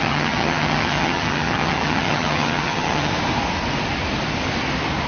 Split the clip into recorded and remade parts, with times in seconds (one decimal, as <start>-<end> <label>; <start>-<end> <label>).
0.0-3.1 remade; 3.1-5.1 recorded